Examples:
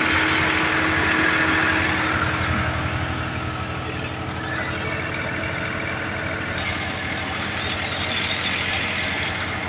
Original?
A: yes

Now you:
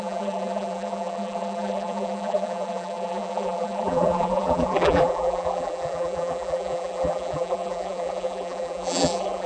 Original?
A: no